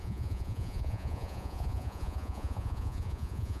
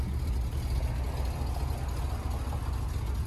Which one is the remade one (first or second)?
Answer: first